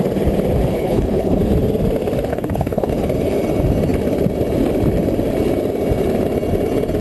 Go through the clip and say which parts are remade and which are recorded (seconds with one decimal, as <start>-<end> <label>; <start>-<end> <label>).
0.0-0.7 recorded; 0.7-1.4 remade; 1.4-2.3 recorded; 2.3-2.9 remade; 2.9-7.0 recorded